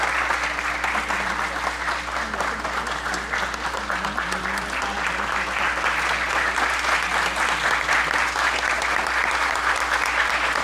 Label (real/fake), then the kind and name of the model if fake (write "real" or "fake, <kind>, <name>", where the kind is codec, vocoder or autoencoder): real